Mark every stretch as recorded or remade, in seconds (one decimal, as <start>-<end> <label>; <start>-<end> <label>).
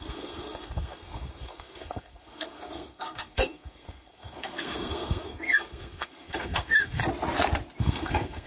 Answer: 0.0-7.0 remade; 7.0-7.8 recorded; 7.8-8.5 remade